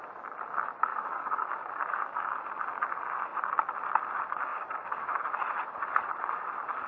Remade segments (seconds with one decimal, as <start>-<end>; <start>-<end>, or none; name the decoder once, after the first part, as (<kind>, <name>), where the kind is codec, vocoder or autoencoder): 0.9-2.4 (codec, DAC); 4.5-5.2